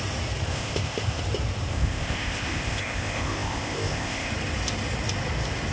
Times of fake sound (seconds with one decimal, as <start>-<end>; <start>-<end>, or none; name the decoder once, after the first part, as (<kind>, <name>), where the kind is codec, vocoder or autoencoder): 0.5-1.2 (codec, ZipCodec); 1.7-4.3